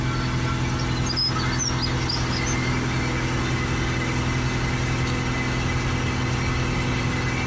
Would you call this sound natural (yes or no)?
yes